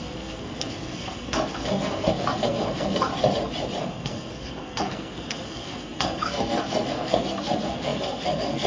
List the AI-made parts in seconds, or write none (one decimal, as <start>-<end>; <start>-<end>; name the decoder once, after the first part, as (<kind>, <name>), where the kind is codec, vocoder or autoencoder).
0.0-3.1 (codec, SNAC); 3.8-8.7